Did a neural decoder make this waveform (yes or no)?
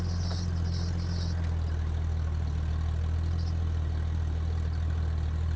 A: no